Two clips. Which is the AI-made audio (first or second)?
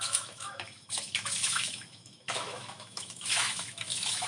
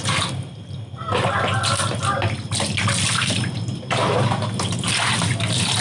first